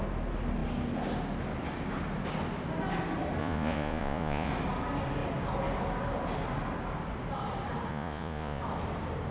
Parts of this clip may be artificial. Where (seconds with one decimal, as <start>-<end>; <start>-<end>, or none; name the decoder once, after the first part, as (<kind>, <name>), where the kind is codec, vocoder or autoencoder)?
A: 3.4-4.5 (vocoder, Vocos); 7.9-8.6